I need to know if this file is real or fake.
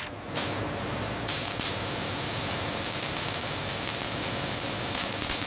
real